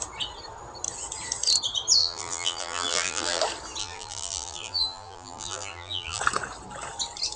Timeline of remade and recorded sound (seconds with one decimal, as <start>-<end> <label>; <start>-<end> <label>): 0.0-2.0 recorded; 2.0-3.4 remade; 3.4-3.8 recorded; 3.8-6.2 remade; 6.2-7.4 recorded